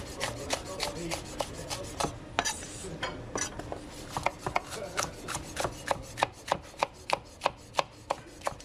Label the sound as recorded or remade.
recorded